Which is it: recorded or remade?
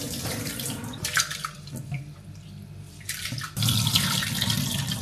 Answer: remade